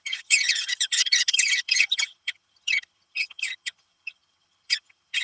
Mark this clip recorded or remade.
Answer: remade